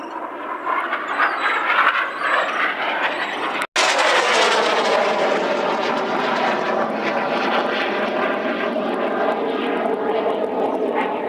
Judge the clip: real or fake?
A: real